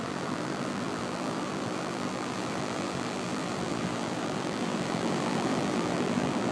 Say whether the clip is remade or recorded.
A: remade